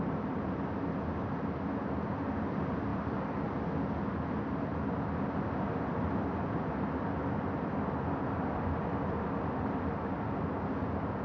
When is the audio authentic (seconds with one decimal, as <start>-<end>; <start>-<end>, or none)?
0.0-11.2